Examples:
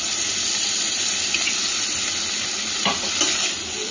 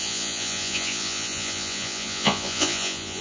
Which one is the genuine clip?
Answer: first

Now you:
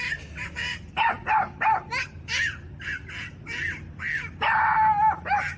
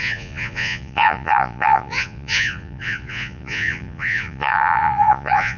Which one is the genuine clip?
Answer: first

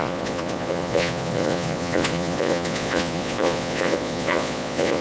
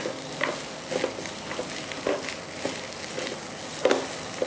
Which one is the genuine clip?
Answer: second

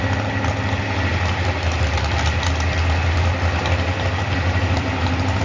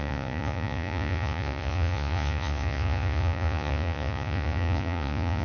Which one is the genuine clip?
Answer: first